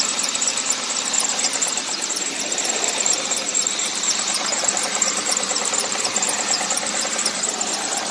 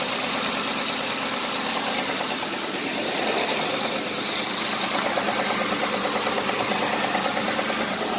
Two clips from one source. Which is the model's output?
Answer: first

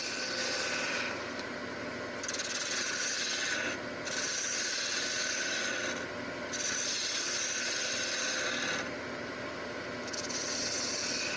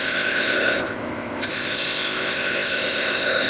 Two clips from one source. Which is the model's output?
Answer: second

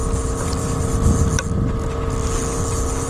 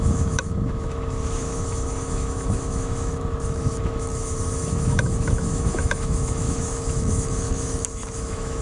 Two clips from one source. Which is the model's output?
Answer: second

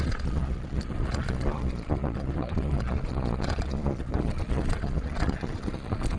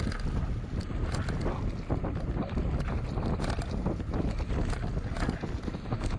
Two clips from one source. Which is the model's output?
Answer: first